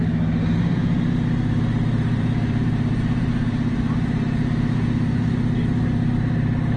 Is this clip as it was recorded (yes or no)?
no